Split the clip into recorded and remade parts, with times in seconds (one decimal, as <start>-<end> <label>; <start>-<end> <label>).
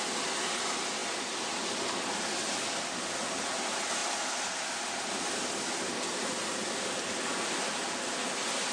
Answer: 0.0-8.7 recorded